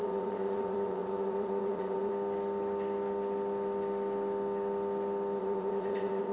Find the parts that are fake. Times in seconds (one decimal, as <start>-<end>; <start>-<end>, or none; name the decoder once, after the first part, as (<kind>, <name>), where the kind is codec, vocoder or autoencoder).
0.0-2.1 (vocoder, Vocos); 5.4-6.3

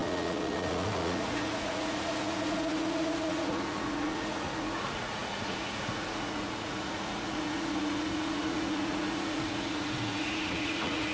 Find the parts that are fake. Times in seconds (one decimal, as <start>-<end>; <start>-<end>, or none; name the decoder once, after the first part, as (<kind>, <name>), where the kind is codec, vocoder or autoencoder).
0.0-11.1 (vocoder, Vocos)

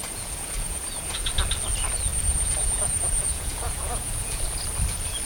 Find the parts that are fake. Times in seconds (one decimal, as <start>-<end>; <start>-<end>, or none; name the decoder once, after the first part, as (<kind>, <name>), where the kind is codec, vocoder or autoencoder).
0.0-1.3 (vocoder, Vocos); 2.1-4.4

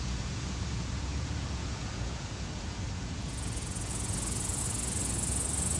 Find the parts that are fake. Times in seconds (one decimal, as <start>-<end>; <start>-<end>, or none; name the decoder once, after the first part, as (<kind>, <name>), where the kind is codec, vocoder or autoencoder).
0.0-5.8 (vocoder, Vocos)

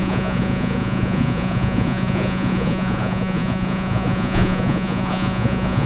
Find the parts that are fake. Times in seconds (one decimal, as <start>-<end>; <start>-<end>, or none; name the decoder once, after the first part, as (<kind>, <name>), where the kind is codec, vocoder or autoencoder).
0.0-5.9 (vocoder, Vocos)

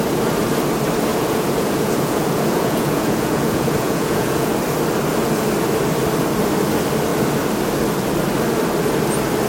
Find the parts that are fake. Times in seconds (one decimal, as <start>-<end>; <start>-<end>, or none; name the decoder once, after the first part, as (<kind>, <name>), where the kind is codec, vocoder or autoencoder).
1.1-4.5 (vocoder, Vocos)

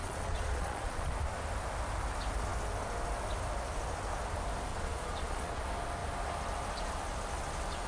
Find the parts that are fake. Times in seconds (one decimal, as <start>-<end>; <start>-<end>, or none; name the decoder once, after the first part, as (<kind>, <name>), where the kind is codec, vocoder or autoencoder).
0.0-1.1 (vocoder, Vocos); 4.7-5.6